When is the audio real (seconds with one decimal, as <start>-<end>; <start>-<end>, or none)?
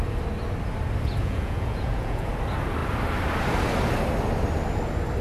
0.0-1.2; 2.3-5.2